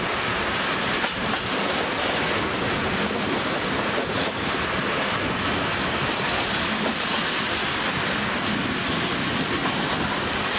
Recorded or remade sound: recorded